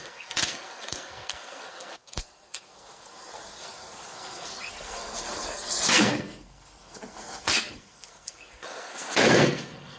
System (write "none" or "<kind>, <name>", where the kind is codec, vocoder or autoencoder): codec, SNAC